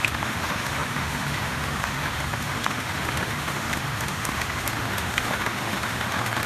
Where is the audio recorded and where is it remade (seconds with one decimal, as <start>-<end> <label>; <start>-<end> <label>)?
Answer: 0.0-6.5 remade